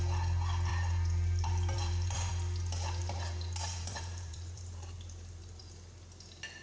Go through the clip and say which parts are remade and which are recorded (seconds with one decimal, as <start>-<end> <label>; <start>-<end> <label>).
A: 0.0-0.7 recorded; 0.7-2.3 remade; 2.3-3.0 recorded; 3.0-5.6 remade; 5.6-6.6 recorded